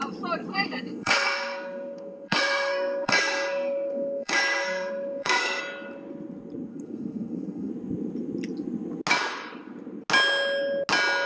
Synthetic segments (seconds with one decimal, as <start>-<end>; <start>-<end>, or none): 0.5-5.6; 6.7-7.7